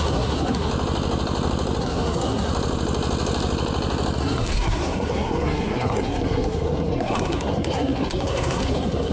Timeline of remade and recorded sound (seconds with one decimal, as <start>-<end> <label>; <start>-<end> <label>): 0.0-0.7 remade; 0.7-1.8 recorded; 1.8-2.5 remade; 2.5-4.2 recorded; 4.2-9.1 remade